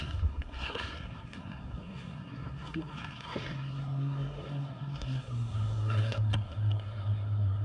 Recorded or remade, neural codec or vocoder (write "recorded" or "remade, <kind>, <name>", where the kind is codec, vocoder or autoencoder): remade, codec, SNAC